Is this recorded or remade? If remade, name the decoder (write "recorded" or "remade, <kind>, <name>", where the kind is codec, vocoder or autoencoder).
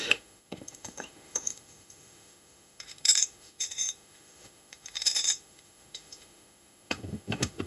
remade, autoencoder, DAC-VAE